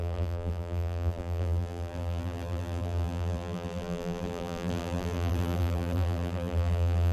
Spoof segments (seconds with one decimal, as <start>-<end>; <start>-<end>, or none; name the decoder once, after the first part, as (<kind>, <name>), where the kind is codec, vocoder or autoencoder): 0.0-7.1 (vocoder, BigVGAN v2)